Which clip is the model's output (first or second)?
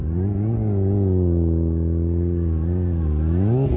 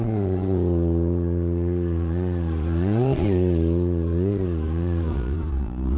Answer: second